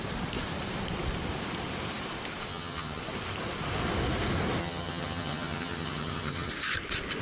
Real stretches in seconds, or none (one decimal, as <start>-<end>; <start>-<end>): 0.0-2.5; 3.0-4.6; 6.5-7.2